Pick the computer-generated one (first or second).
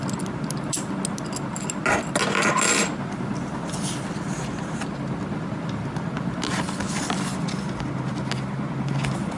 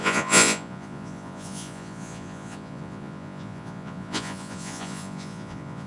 second